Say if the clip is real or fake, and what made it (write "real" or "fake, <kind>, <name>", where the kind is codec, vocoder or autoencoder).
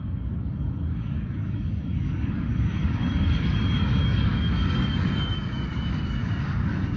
fake, codec, DAC